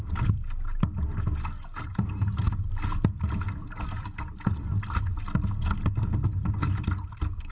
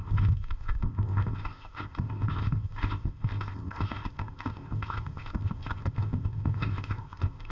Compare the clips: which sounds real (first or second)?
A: first